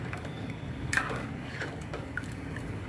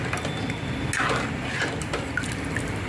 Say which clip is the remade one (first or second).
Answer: first